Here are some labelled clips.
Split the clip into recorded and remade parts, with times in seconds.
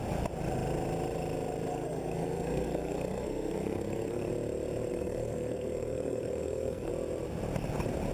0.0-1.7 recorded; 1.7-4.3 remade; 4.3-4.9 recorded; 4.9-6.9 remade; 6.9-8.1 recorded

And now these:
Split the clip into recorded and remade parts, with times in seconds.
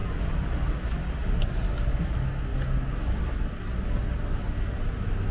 0.0-5.3 recorded